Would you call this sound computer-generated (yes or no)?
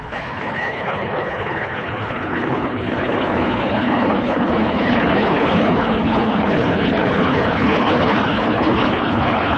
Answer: yes